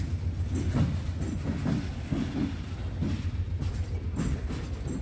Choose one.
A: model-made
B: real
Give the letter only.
B